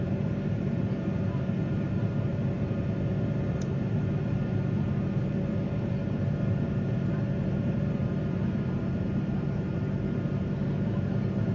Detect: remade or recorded remade